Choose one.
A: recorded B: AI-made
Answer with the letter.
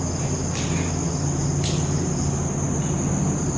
A